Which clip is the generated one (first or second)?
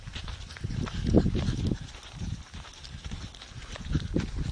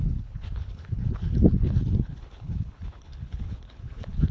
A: second